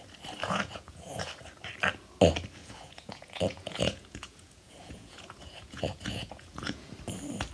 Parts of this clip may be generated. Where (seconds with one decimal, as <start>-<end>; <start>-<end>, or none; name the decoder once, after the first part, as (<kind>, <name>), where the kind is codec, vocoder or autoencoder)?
0.4-1.3 (vocoder, Vocos); 2.6-6.9